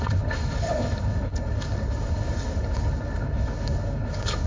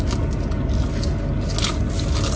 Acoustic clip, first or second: second